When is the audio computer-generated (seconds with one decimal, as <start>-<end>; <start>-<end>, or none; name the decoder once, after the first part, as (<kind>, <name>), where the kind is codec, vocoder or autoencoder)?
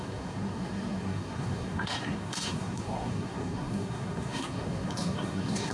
0.0-5.7 (codec, SNAC)